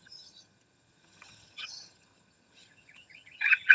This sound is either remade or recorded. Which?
remade